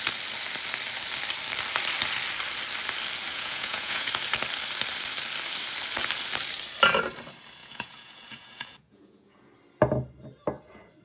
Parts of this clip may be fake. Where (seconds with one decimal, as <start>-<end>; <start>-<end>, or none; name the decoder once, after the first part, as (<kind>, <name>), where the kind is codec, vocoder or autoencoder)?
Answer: 3.3-4.1 (vocoder, Vocos); 7.6-9.5